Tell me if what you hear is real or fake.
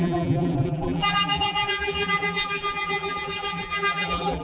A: fake